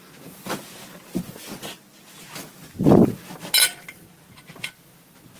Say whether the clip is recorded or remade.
recorded